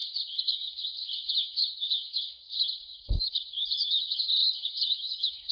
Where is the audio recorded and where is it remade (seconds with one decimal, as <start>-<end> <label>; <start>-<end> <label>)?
0.0-5.5 remade